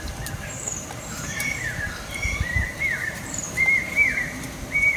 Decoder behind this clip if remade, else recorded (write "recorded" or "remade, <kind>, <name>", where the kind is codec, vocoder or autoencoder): remade, vocoder, BigVGAN v2